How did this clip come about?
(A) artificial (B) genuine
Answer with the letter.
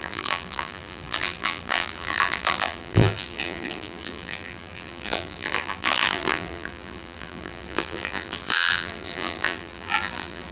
A